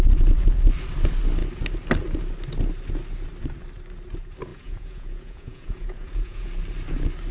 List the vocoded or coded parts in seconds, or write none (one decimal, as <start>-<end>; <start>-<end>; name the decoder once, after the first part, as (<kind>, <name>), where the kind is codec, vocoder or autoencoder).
4.5-6.5 (vocoder, Vocos)